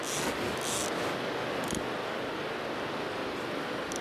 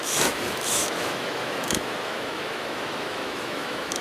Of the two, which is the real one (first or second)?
first